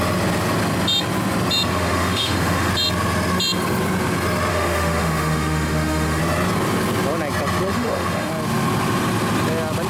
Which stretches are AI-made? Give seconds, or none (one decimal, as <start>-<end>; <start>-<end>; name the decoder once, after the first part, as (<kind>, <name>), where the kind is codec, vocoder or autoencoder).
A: 1.7-2.7 (autoencoder, DAC-VAE); 4.5-6.2; 7.7-8.3